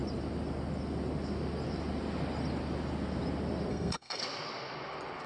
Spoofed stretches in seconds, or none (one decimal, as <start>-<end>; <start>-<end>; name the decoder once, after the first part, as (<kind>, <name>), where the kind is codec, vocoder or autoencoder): 3.7-4.2 (codec, SNAC)